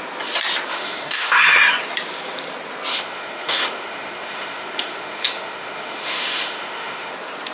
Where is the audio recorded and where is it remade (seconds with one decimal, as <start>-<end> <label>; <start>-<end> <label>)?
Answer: 0.0-0.7 recorded; 0.7-1.4 remade; 1.4-2.9 recorded; 2.9-7.1 remade; 7.1-7.5 recorded